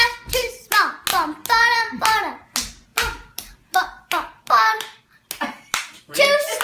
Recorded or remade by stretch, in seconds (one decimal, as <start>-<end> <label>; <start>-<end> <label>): 0.0-2.9 recorded; 2.9-5.3 remade; 5.3-6.6 recorded